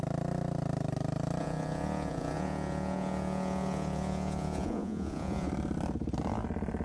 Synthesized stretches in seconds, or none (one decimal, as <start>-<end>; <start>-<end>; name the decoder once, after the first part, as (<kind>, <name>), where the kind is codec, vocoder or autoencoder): 1.4-5.5 (vocoder, Vocos)